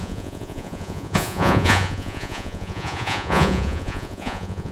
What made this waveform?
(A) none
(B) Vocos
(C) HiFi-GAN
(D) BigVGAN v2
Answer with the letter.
B